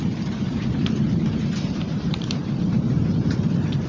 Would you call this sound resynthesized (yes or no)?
yes